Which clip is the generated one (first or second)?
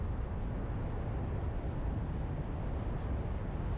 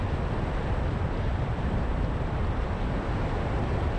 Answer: second